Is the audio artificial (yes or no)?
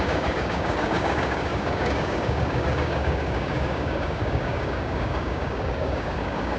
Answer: yes